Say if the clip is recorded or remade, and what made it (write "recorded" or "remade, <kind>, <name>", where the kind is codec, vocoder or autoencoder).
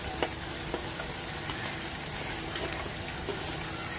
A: recorded